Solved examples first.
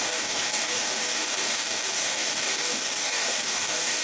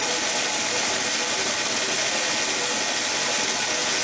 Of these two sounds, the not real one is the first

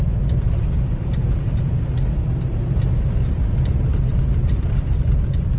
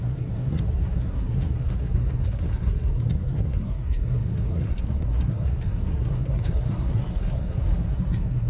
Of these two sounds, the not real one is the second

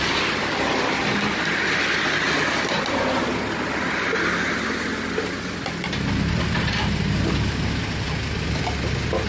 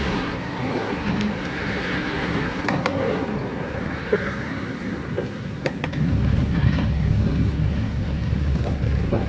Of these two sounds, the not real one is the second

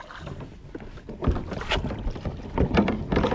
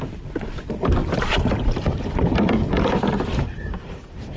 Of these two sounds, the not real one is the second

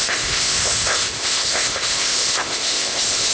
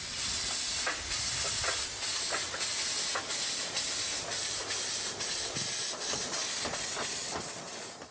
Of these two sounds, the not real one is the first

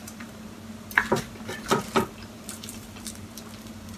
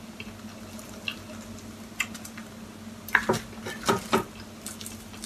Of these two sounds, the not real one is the first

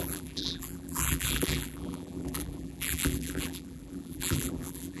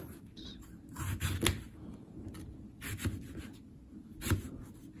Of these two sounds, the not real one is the first